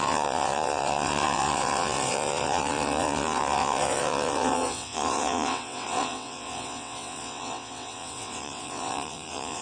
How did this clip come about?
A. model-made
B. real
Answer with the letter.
A